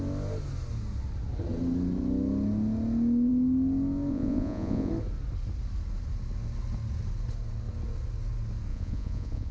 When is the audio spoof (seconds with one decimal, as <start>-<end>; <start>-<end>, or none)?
4.1-4.9; 8.7-9.5